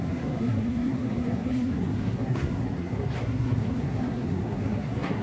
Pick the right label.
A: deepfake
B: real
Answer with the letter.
A